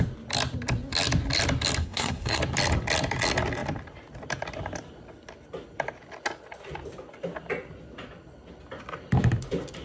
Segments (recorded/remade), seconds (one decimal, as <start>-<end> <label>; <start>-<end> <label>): 0.0-1.8 recorded; 1.8-2.4 remade; 2.4-9.8 recorded

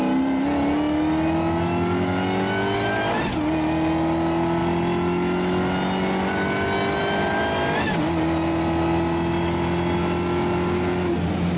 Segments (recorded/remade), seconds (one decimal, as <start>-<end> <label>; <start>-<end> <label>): 0.0-11.6 recorded

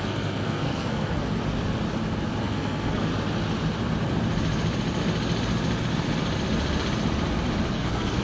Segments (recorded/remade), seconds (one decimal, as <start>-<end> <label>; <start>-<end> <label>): 0.0-1.4 remade; 1.4-2.4 recorded; 2.4-3.1 remade; 3.1-7.7 recorded; 7.7-8.2 remade

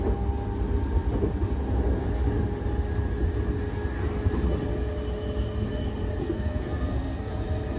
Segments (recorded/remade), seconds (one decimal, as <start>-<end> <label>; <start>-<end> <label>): 0.0-6.2 recorded; 6.2-7.3 remade; 7.3-7.8 recorded

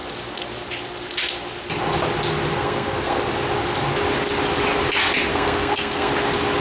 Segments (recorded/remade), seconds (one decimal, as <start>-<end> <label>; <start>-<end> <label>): 0.0-2.5 recorded; 2.5-3.2 remade; 3.2-5.3 recorded; 5.3-6.1 remade; 6.1-6.6 recorded

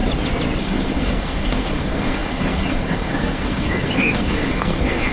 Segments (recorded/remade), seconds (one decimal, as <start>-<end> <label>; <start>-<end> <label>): 0.0-0.6 recorded; 0.6-5.1 remade